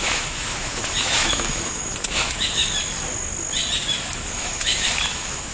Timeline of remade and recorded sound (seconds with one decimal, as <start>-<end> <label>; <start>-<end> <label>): 0.0-2.6 remade; 2.6-4.0 recorded; 4.0-5.5 remade